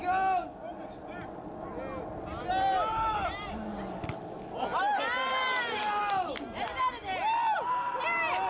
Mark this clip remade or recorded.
recorded